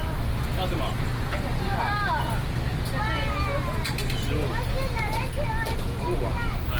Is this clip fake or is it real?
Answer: real